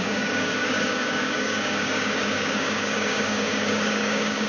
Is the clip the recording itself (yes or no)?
no